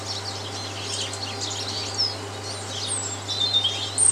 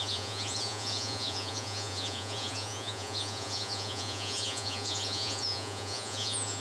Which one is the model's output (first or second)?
second